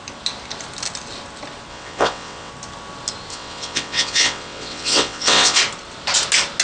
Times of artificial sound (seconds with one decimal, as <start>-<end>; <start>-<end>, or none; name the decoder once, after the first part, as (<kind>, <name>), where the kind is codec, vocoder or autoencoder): 1.7-2.5 (vocoder, WaveNeXt); 3.3-5.6